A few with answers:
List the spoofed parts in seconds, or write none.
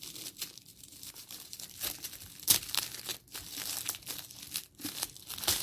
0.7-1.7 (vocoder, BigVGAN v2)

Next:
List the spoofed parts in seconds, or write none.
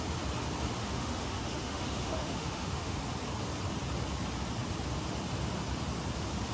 0.8-3.0 (autoencoder, DAC-VAE)